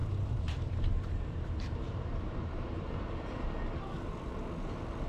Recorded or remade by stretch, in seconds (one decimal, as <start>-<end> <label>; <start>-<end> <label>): 0.0-3.1 remade; 3.1-5.1 recorded